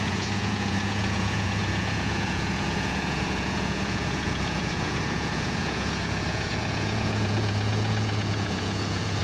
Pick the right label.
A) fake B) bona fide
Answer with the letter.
A